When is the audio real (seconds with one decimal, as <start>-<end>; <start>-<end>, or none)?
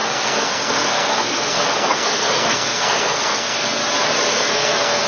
3.8-4.3